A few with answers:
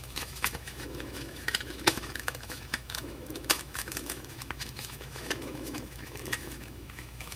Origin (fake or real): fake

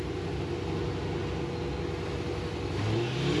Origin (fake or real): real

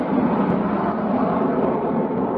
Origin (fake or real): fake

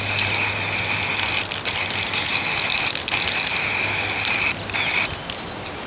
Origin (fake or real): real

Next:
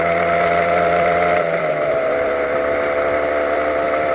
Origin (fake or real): fake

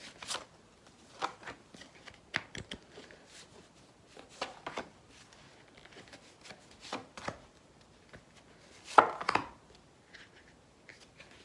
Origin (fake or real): real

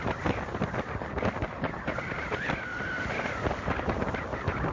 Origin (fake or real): real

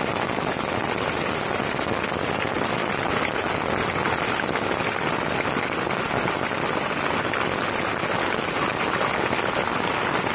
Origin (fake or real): real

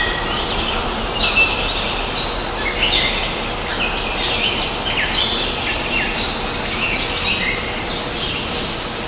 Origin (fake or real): real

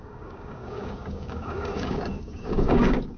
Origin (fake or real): fake